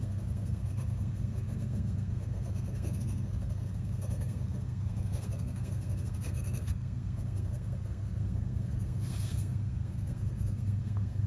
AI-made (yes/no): yes